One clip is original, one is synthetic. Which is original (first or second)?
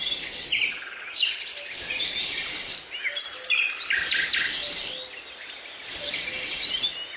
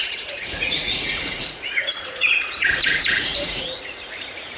first